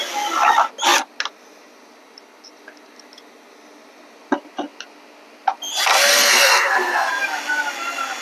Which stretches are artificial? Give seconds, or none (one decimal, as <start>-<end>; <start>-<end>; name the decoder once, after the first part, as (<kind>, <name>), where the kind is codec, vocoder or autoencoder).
6.1-7.1 (codec, SNAC)